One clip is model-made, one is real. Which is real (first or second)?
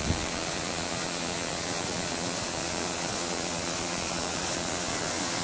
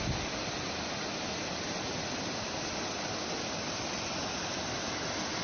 second